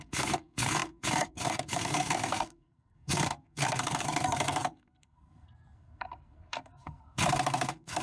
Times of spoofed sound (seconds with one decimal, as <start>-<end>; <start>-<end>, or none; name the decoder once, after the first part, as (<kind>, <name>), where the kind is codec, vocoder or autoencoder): 0.0-8.0 (codec, SNAC)